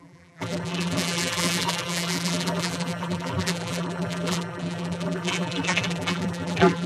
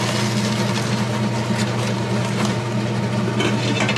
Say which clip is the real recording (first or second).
second